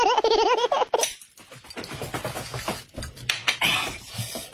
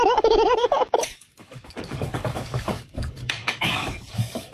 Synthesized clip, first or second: second